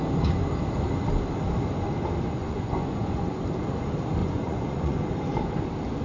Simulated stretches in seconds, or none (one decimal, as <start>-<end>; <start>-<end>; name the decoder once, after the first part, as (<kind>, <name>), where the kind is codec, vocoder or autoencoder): 2.4-3.4 (vocoder, Vocos); 4.2-5.1